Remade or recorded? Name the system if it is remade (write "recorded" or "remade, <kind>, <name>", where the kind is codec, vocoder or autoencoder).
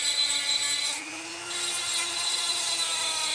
recorded